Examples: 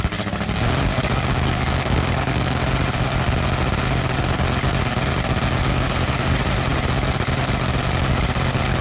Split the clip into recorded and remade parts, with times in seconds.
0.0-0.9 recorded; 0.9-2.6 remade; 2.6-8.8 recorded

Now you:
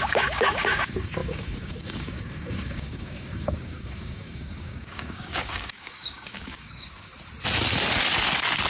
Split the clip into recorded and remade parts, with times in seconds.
0.0-7.1 remade; 7.1-8.7 recorded

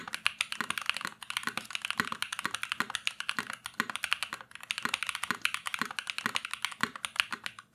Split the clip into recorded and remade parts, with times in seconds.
0.0-7.7 recorded

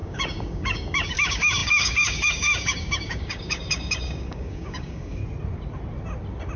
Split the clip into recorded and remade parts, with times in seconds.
0.0-5.2 remade; 5.2-6.6 recorded

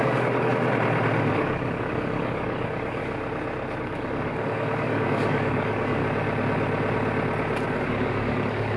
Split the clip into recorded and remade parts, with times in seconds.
0.0-0.5 remade; 0.5-1.3 recorded; 1.3-3.0 remade; 3.0-3.8 recorded; 3.8-6.0 remade; 6.0-7.8 recorded; 7.8-8.8 remade